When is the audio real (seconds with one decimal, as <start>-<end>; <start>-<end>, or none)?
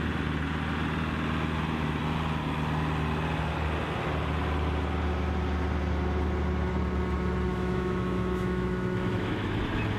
0.0-7.5; 9.5-10.0